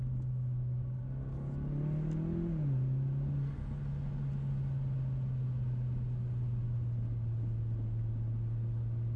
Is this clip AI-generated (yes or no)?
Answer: no